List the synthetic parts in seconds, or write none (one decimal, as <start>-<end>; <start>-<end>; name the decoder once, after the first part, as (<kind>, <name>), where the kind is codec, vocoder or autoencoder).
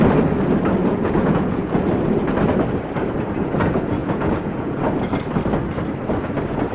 0.8-1.8 (vocoder, Vocos); 4.0-4.8